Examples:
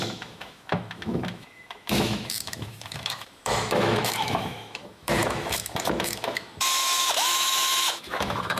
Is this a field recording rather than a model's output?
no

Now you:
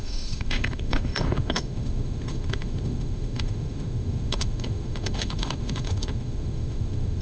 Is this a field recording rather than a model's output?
no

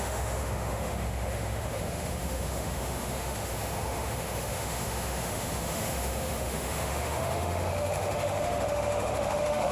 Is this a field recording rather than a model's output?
no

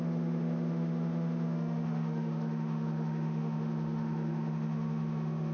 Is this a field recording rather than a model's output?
no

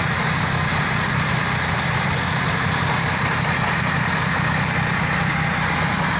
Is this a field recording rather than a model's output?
yes